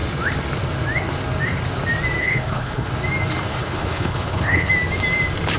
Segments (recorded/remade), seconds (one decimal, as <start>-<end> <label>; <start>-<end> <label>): 0.0-2.2 recorded; 2.2-2.9 remade; 2.9-3.5 recorded; 3.5-4.7 remade; 4.7-5.6 recorded